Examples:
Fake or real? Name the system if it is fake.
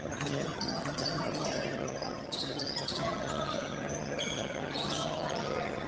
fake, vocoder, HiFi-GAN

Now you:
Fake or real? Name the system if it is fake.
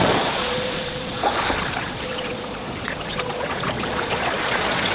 fake, vocoder, Vocos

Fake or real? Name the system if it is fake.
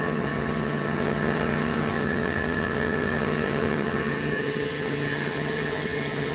fake, vocoder, HiFi-GAN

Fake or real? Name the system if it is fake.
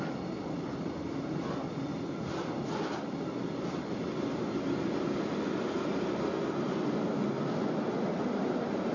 real